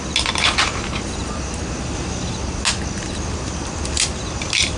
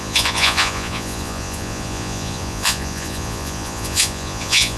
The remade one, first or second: second